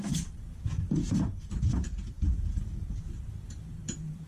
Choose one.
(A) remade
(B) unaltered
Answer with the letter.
A